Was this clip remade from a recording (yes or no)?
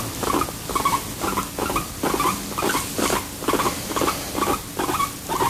no